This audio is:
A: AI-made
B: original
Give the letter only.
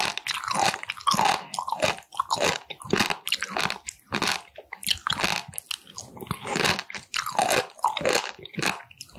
B